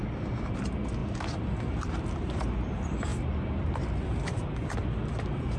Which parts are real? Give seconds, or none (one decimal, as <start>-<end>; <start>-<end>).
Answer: 0.0-5.6